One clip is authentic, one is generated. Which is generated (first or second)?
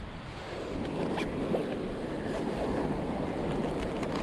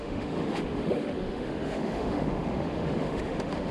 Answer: second